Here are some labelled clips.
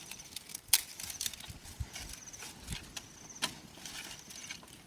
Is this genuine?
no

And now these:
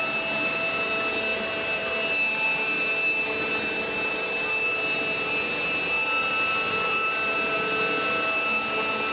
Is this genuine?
no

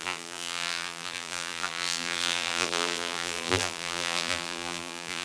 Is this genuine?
no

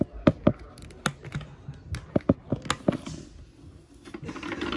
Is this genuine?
yes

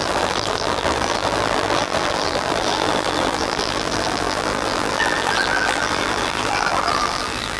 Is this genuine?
no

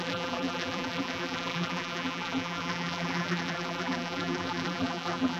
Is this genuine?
no